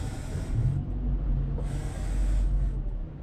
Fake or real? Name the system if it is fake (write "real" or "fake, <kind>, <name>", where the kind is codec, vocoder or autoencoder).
real